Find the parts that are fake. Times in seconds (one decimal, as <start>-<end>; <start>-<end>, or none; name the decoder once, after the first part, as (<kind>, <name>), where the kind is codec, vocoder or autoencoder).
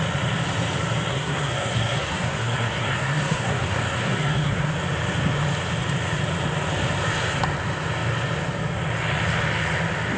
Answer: 1.1-4.7 (codec, SNAC)